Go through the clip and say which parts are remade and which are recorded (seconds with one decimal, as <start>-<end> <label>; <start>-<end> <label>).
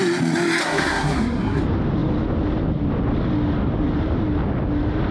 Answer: 0.0-0.6 recorded; 0.6-1.6 remade; 1.6-5.1 recorded